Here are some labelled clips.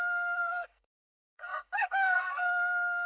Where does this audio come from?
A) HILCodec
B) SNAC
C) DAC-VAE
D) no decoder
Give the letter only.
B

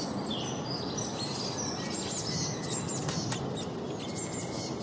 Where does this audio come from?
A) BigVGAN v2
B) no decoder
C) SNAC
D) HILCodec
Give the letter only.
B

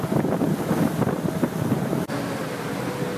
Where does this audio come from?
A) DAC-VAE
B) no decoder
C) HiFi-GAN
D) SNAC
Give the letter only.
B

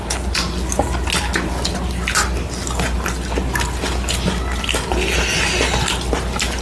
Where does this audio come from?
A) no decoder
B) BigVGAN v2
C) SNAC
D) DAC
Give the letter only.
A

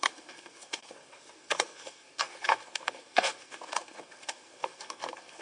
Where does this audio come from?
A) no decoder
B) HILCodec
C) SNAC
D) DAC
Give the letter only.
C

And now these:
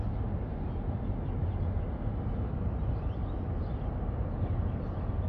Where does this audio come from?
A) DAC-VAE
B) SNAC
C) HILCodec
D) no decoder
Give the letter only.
D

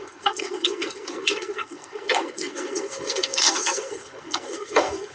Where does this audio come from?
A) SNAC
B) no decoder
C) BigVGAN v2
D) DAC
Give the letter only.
A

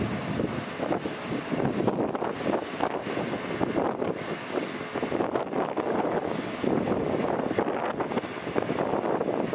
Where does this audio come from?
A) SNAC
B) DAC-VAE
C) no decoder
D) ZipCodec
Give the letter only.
C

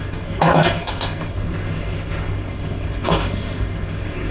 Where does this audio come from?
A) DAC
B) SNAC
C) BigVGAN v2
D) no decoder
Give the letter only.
B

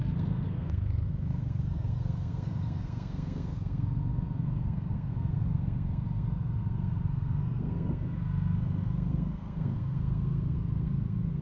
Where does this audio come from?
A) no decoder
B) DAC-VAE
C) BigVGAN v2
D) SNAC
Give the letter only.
D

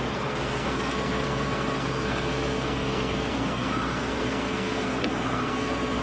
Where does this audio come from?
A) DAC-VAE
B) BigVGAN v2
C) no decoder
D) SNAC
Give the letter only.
D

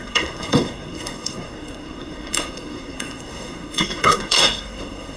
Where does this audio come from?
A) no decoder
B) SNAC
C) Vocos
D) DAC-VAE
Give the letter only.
B